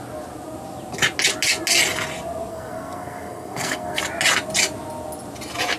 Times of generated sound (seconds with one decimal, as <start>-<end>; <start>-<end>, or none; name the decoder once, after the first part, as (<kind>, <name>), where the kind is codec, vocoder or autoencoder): 2.5-4.0 (codec, SNAC)